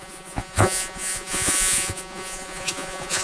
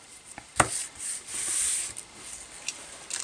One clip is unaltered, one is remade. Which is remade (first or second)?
first